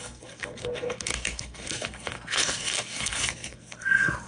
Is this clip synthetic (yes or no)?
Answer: yes